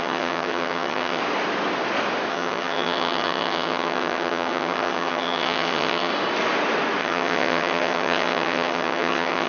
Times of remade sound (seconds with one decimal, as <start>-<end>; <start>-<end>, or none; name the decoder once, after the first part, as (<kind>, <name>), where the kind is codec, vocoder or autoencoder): 0.0-1.2 (vocoder, HiFi-GAN); 2.3-6.1; 7.0-9.5